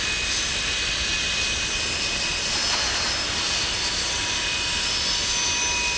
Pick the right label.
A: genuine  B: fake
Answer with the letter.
A